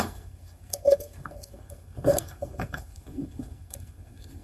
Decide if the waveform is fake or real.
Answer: fake